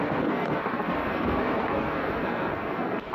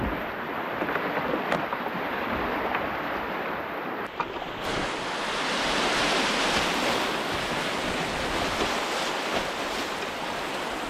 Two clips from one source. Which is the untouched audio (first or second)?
second